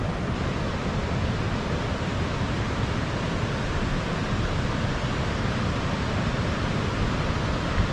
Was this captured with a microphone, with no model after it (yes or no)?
yes